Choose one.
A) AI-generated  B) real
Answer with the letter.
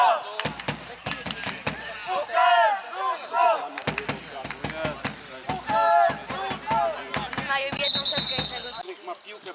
B